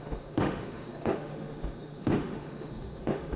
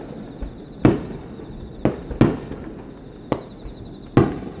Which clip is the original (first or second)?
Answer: second